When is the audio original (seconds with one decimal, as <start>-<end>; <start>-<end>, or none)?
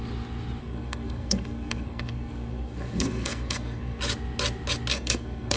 0.0-0.6; 4.0-4.9